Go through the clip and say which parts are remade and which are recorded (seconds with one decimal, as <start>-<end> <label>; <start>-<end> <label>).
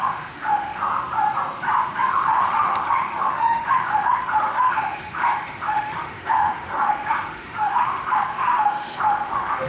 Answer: 0.0-0.8 remade; 0.8-2.1 recorded; 2.1-9.7 remade